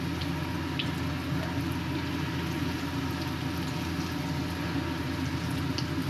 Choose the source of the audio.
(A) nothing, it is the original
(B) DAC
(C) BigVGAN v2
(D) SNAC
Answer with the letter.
A